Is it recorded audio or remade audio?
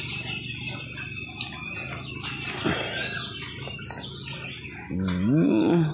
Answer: recorded